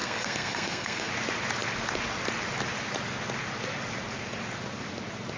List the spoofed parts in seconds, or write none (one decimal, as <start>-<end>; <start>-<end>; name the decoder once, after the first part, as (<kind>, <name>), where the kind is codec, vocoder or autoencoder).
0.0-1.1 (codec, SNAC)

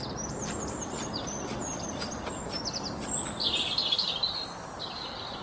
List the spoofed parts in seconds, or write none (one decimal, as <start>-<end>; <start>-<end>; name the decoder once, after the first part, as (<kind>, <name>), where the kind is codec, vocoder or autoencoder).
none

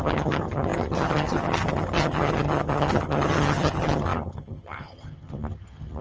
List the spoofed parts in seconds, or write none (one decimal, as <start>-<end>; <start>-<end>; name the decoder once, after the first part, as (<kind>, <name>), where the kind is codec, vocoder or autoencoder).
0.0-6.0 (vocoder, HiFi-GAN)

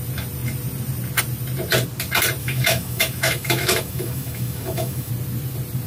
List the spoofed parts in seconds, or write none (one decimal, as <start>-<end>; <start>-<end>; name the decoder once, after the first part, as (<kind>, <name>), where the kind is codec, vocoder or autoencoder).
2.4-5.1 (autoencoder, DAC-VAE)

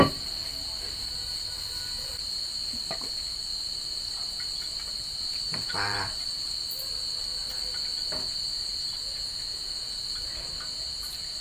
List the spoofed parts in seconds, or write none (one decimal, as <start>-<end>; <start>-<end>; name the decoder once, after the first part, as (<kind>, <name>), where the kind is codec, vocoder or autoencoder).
2.1-6.3 (vocoder, BigVGAN v2)

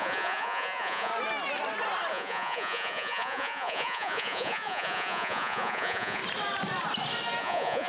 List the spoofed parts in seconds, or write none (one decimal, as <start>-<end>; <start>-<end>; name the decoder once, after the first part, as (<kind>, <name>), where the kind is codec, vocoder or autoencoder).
0.0-1.1 (vocoder, Vocos); 2.1-6.2; 7.4-7.9

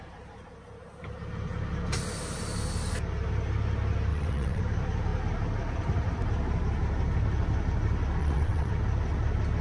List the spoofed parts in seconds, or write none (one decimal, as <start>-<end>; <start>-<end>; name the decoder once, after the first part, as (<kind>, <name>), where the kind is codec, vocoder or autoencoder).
4.1-4.6 (vocoder, WaveNeXt); 8.2-8.7

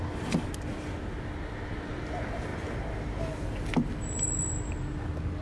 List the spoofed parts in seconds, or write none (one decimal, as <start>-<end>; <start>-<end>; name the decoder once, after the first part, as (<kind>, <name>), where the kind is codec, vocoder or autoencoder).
none